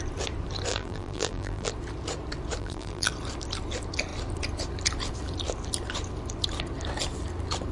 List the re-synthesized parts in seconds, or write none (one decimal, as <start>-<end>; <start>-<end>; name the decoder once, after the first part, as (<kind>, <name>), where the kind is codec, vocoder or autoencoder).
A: 0.7-1.7 (vocoder, BigVGAN v2); 2.6-3.1